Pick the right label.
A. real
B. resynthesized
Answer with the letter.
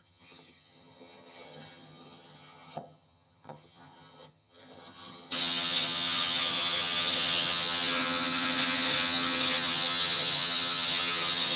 B